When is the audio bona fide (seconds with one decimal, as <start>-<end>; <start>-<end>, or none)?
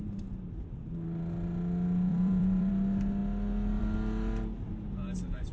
0.0-2.1; 2.7-5.5